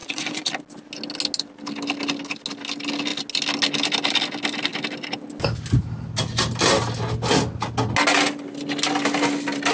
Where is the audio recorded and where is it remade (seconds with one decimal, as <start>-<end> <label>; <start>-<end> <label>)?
0.0-0.5 remade; 0.5-9.7 recorded